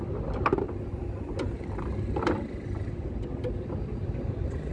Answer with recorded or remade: recorded